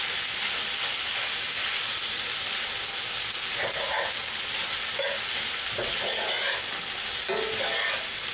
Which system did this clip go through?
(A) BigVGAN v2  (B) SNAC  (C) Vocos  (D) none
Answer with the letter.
D